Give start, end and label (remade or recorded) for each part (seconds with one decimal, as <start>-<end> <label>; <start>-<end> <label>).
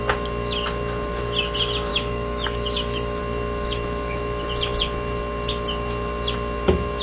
0.0-1.9 recorded; 1.9-3.2 remade; 3.2-7.0 recorded